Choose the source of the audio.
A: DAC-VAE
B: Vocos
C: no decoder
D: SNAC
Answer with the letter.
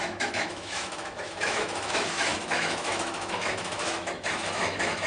A